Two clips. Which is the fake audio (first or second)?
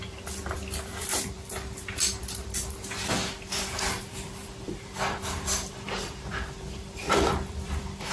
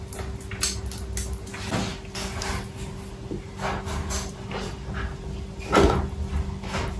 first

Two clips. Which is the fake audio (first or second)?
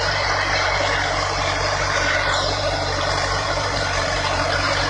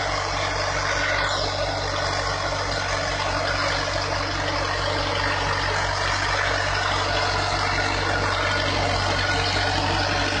first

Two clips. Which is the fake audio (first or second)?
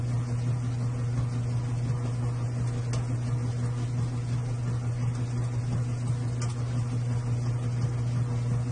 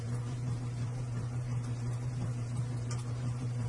second